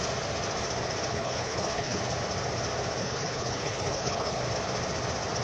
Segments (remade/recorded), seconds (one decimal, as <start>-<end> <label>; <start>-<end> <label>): 0.0-1.1 recorded; 1.1-2.0 remade; 2.0-3.0 recorded; 3.0-4.4 remade; 4.4-5.4 recorded